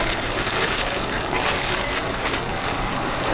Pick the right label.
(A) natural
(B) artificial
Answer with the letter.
B